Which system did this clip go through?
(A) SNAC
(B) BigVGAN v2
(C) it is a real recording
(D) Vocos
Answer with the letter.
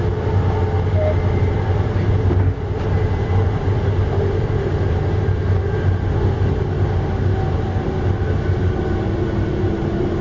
C